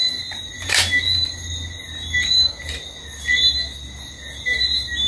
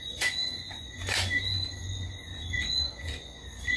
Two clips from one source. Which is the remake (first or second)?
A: second